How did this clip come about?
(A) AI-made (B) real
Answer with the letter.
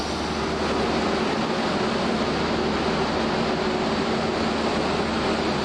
B